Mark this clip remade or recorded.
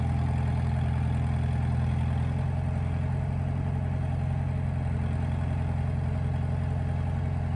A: recorded